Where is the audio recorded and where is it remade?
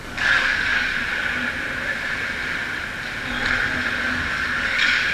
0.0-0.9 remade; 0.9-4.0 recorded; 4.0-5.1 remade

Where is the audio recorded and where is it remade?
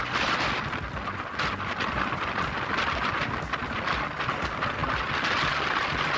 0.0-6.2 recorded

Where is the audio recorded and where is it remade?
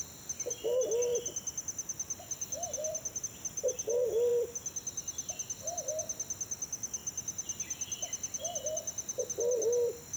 0.0-10.2 recorded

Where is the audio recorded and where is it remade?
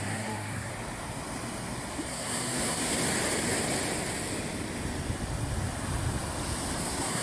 0.0-0.7 remade; 0.7-2.1 recorded; 2.1-2.9 remade; 2.9-6.8 recorded; 6.8-7.2 remade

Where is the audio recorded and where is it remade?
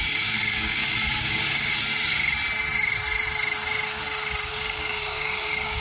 0.0-1.7 remade; 1.7-4.5 recorded; 4.5-5.8 remade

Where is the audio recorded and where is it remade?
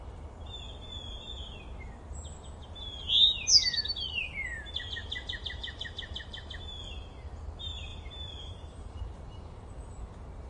0.0-5.0 recorded; 5.0-6.5 remade; 6.5-7.9 recorded; 7.9-9.0 remade; 9.0-10.5 recorded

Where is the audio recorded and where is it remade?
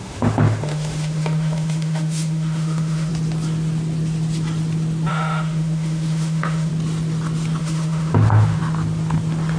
0.0-3.1 remade; 3.1-5.1 recorded; 5.1-6.7 remade; 6.7-7.6 recorded; 7.6-8.6 remade; 8.6-9.6 recorded